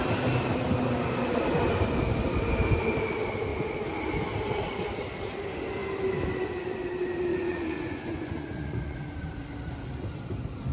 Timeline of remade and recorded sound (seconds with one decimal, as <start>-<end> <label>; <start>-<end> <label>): 0.0-7.3 recorded; 7.3-9.2 remade; 9.2-10.7 recorded